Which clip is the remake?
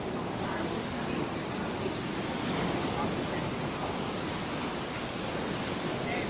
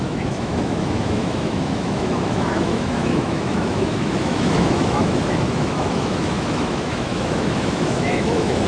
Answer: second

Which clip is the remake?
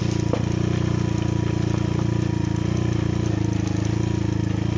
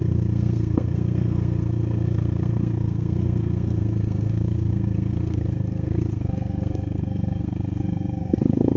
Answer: second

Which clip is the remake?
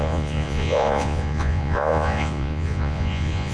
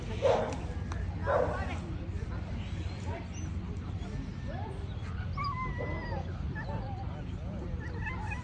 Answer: first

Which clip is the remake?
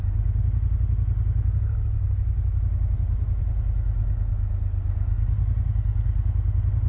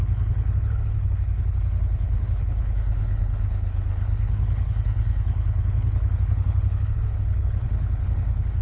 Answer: second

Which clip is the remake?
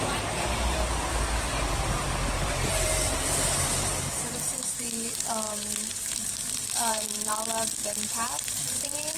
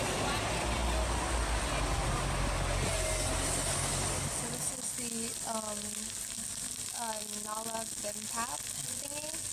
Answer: first